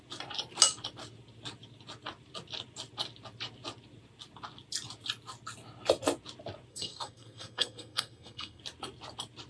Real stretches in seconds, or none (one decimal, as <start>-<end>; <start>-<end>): 0.0-6.7; 8.6-9.5